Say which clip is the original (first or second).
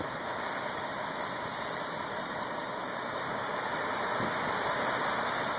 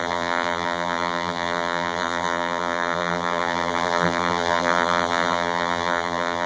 first